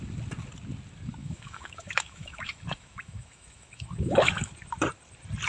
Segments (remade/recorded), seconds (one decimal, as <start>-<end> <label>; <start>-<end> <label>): 0.0-1.2 recorded; 1.2-4.5 remade; 4.5-5.5 recorded